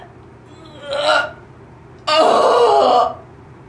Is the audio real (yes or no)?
yes